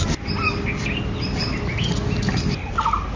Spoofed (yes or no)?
no